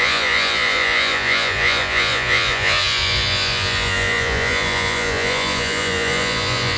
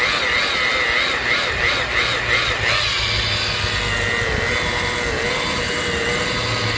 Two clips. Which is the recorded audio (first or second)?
second